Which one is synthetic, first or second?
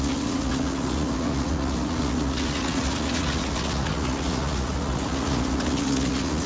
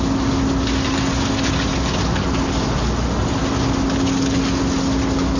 first